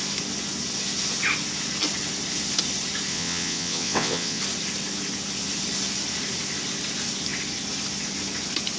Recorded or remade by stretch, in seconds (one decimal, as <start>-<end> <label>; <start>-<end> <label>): 0.0-3.1 recorded; 3.1-4.4 remade; 4.4-8.8 recorded